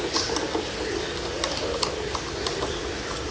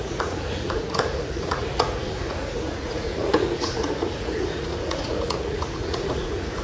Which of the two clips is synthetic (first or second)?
second